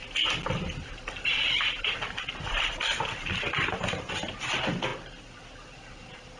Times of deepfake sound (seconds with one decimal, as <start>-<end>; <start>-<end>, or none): none